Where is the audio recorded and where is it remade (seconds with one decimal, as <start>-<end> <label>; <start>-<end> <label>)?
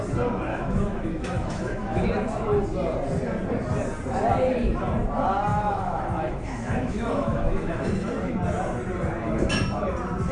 0.0-0.5 recorded; 0.5-2.1 remade; 2.1-5.5 recorded; 5.5-8.1 remade; 8.1-10.3 recorded